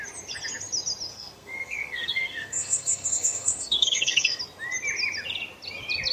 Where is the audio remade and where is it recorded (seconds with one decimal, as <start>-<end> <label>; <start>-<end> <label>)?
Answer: 0.0-1.1 recorded; 1.1-4.4 remade; 4.4-6.1 recorded